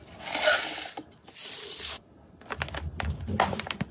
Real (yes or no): yes